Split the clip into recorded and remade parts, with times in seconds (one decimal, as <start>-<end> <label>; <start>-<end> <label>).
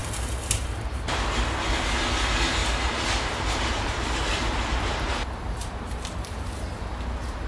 0.0-1.1 remade; 1.1-2.6 recorded; 2.6-6.8 remade; 6.8-7.5 recorded